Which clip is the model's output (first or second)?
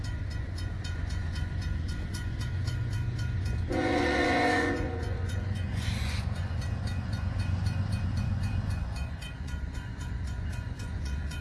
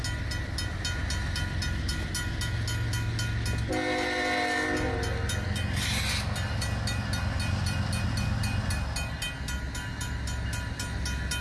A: first